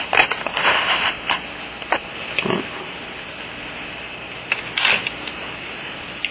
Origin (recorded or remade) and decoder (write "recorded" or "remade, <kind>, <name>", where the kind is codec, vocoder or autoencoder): recorded